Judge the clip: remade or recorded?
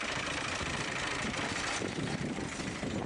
remade